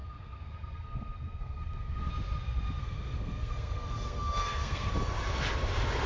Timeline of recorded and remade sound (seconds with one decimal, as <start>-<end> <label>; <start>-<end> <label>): 0.0-2.1 remade; 2.1-2.8 recorded; 2.8-4.9 remade; 4.9-6.1 recorded